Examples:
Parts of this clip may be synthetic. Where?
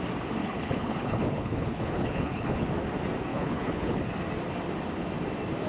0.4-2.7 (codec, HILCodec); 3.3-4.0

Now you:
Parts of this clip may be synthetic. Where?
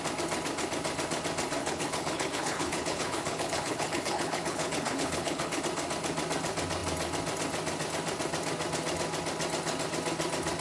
1.6-5.6 (codec, HILCodec)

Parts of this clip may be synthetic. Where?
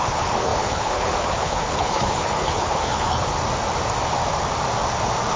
0.0-3.4 (codec, HILCodec)